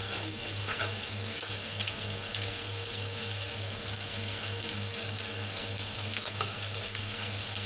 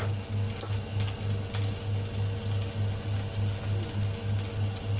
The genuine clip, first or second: second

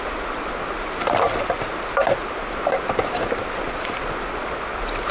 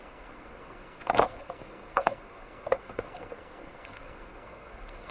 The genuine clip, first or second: first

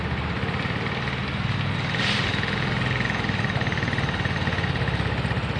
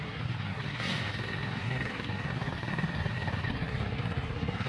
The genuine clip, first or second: first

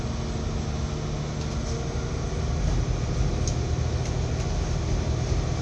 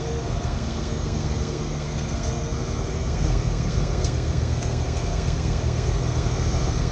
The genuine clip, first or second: first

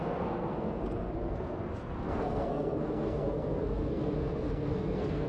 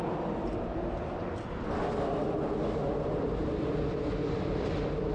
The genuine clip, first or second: second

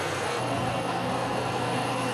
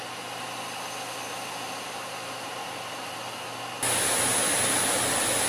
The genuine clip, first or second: second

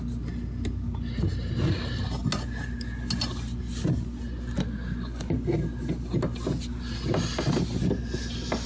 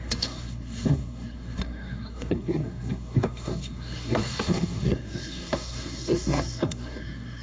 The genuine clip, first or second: first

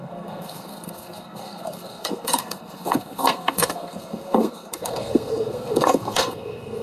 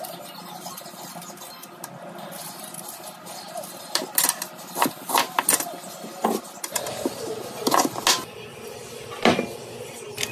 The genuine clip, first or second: second